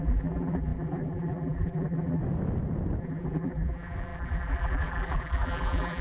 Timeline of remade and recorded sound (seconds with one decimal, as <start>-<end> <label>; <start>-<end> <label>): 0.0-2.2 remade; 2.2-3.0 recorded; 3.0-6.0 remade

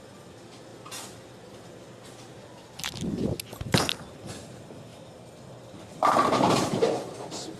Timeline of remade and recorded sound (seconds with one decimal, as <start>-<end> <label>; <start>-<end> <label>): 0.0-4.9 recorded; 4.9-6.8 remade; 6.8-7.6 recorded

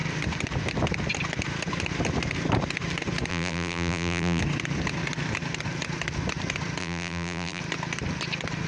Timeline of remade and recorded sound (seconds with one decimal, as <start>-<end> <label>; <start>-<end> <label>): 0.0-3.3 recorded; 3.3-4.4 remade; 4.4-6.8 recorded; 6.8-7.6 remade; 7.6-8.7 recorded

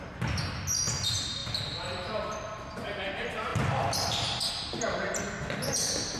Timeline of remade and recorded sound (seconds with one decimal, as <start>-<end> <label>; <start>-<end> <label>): 0.0-3.5 recorded; 3.5-4.5 remade; 4.5-6.2 recorded